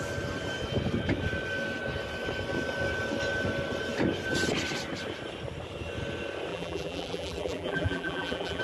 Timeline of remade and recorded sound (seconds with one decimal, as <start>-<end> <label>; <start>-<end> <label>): 0.0-6.5 recorded; 6.5-8.6 remade